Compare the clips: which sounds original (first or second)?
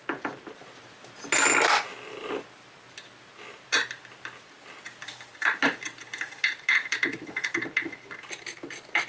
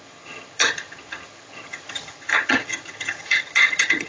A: first